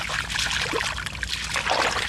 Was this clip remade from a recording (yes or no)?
no